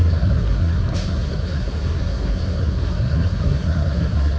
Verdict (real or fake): fake